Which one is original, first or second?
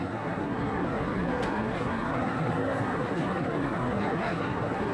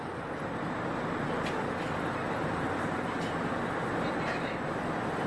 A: second